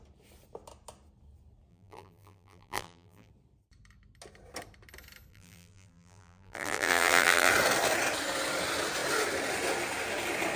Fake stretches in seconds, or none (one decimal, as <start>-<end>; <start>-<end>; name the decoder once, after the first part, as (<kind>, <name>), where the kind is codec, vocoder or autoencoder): 1.7-3.3 (vocoder, BigVGAN v2); 5.3-7.5